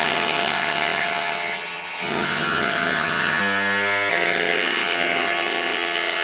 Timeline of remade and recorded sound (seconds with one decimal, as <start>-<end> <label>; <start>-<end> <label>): 0.0-3.4 remade; 3.4-4.1 recorded; 4.1-6.2 remade